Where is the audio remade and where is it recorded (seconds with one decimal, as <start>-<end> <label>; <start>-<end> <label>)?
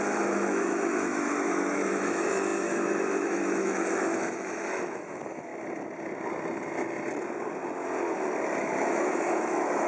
0.0-5.5 remade; 5.5-8.6 recorded; 8.6-9.9 remade